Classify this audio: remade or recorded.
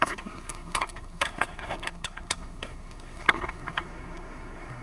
remade